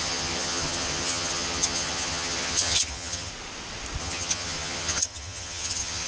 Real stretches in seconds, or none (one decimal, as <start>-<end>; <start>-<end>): 3.3-4.0